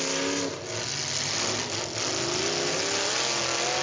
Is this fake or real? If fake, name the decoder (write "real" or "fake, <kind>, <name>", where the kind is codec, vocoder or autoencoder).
real